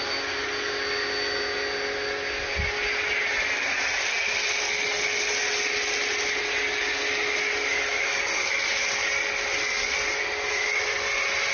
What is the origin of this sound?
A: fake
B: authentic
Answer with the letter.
B